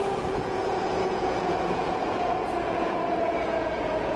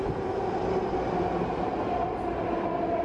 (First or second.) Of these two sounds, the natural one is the second